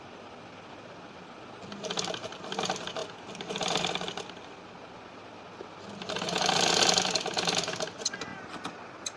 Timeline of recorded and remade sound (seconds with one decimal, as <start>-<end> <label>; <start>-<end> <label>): 0.0-9.2 recorded